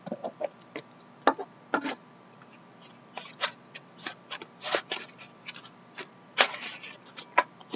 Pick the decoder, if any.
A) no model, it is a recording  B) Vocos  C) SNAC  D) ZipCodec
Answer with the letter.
A